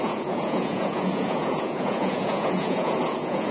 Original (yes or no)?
no